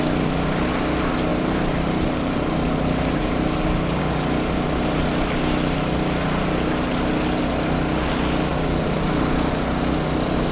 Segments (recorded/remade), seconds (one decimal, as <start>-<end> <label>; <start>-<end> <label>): 0.0-1.3 recorded; 1.3-4.0 remade; 4.0-8.5 recorded; 8.5-9.5 remade; 9.5-10.5 recorded